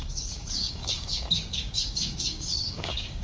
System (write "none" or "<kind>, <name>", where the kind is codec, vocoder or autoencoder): codec, DAC